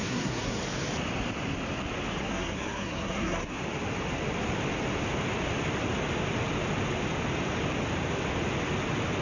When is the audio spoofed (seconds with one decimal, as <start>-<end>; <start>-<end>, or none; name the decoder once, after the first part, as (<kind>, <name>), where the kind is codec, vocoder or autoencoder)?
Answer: 0.0-0.6 (codec, SNAC); 2.2-3.6